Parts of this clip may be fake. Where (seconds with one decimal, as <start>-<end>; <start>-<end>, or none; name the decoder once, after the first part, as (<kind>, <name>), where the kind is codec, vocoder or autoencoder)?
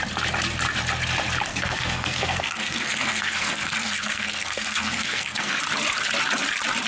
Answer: 1.5-5.6 (codec, SNAC)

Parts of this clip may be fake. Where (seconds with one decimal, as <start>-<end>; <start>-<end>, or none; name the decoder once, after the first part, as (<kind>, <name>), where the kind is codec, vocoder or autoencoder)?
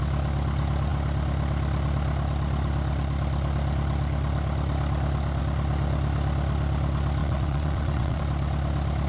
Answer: 7.2-8.2 (vocoder, WaveNeXt)